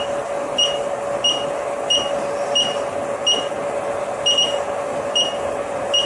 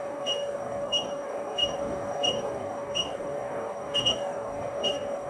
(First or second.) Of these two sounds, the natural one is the first